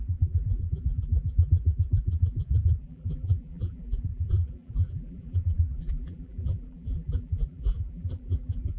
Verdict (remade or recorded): remade